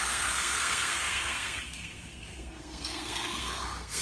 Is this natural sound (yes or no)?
no